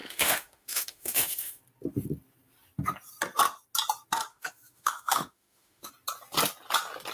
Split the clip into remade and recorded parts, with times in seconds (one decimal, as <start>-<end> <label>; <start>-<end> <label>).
0.0-1.6 remade; 1.6-4.3 recorded; 4.3-5.9 remade; 5.9-7.1 recorded